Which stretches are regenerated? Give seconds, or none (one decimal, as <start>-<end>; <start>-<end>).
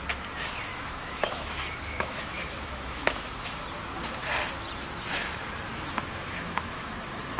0.7-3.6; 5.7-6.9